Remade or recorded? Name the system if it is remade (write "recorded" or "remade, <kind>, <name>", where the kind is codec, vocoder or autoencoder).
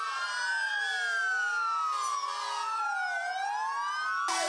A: recorded